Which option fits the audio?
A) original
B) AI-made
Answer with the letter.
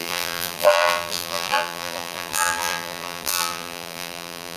B